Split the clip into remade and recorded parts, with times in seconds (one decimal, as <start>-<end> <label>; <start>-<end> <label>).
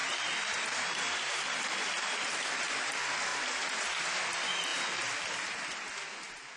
0.0-2.0 recorded; 2.0-3.3 remade; 3.3-4.0 recorded; 4.0-4.7 remade; 4.7-6.6 recorded